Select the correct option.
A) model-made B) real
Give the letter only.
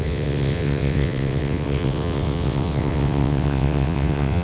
A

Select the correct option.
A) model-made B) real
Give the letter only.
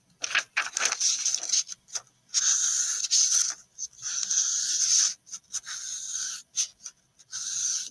B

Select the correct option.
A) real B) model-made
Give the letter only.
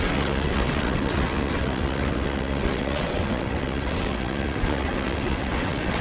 B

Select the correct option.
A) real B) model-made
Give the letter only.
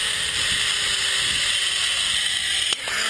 A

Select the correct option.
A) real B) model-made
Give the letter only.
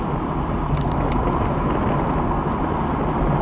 A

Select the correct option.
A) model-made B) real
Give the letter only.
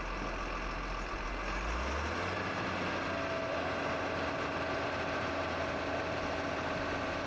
B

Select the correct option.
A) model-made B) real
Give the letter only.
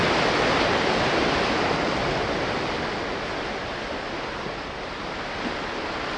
B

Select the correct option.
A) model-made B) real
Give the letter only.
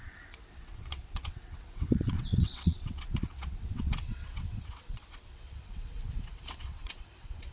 A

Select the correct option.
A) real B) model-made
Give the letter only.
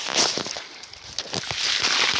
A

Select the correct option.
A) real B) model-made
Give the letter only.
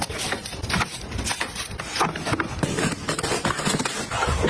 A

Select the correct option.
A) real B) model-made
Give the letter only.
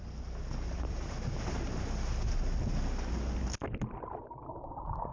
A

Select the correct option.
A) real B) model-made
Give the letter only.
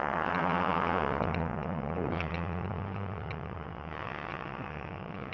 B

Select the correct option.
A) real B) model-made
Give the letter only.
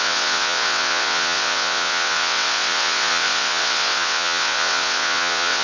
B